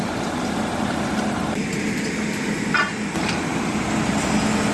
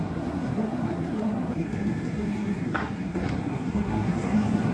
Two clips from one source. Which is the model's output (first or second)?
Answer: second